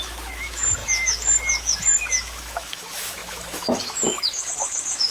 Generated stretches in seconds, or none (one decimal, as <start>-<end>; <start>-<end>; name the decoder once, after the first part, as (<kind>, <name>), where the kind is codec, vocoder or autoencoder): 0.0-5.1 (autoencoder, DAC-VAE)